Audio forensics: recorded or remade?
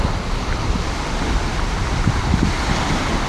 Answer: recorded